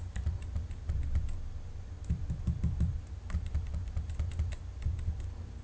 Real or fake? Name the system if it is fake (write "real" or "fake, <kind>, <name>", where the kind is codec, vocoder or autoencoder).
real